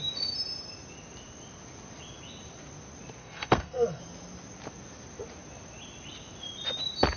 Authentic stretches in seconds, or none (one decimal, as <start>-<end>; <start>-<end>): 0.0-3.2; 4.0-7.2